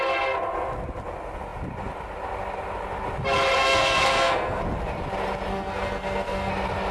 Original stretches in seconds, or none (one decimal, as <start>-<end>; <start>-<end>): 0.0-3.6; 4.6-5.5; 6.5-6.9